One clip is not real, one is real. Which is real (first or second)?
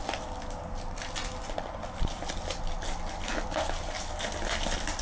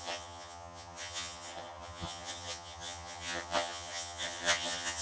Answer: first